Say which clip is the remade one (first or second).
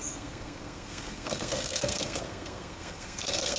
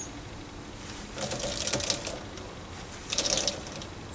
first